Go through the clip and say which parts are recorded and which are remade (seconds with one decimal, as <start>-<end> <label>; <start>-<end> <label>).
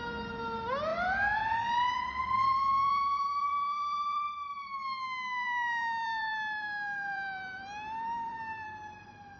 0.0-0.9 recorded; 0.9-4.2 remade; 4.2-5.4 recorded; 5.4-9.4 remade